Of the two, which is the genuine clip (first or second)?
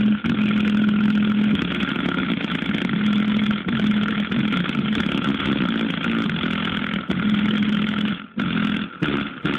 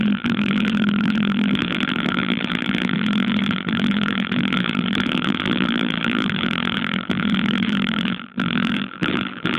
first